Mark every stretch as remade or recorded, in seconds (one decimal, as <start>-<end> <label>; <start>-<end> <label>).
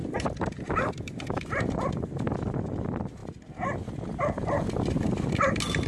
0.0-1.9 remade; 1.9-5.9 recorded